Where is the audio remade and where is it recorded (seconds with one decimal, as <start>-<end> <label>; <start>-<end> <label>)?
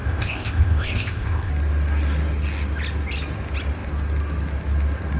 0.0-1.5 remade; 1.5-5.2 recorded